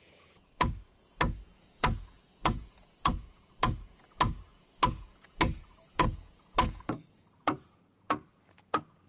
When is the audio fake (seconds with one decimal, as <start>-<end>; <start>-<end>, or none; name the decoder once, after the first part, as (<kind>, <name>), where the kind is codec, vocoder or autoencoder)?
0.0-9.1 (vocoder, Vocos)

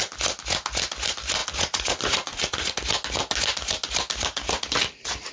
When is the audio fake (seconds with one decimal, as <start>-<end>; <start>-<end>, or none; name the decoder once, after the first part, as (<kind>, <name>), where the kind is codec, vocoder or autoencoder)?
1.4-2.7 (vocoder, Vocos)